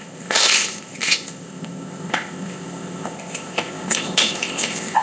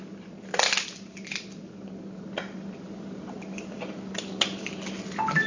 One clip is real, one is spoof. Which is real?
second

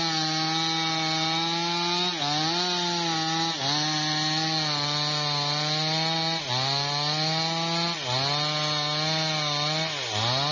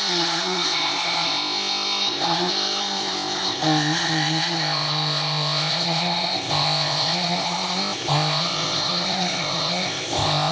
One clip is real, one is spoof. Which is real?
first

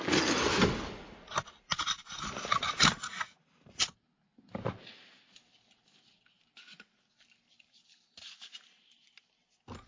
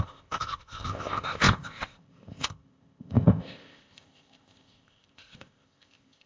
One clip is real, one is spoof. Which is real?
first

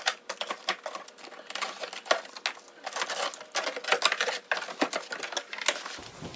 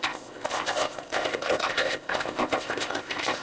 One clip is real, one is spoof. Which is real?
first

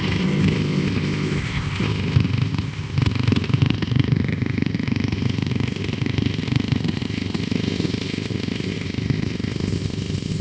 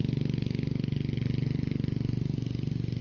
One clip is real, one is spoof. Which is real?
second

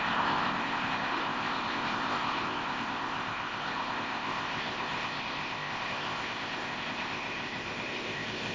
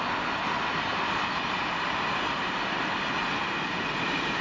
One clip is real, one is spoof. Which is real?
second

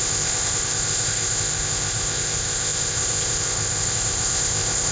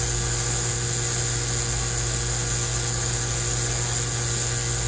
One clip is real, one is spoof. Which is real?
second